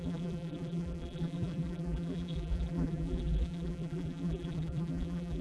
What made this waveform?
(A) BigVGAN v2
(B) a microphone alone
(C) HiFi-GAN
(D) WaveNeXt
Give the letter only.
A